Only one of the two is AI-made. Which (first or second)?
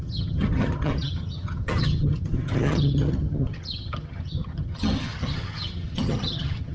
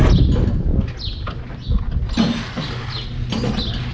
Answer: first